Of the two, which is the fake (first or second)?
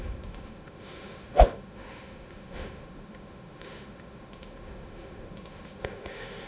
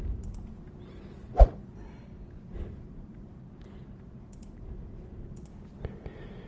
first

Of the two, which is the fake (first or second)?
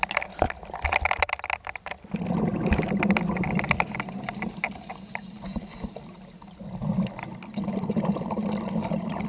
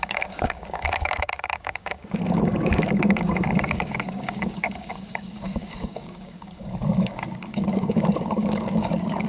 second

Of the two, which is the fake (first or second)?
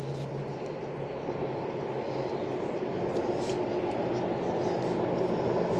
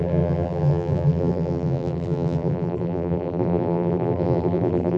second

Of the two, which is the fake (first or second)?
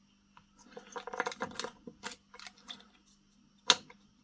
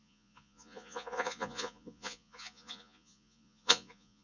second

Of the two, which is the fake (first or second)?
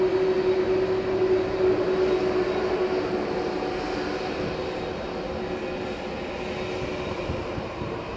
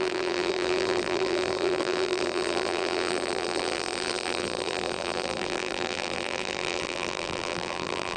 second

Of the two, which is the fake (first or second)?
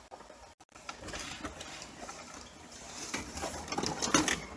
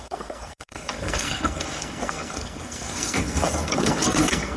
second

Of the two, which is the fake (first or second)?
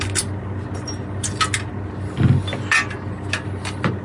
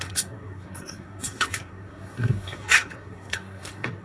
second